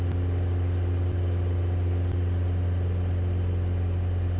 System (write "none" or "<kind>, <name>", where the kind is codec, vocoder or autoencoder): none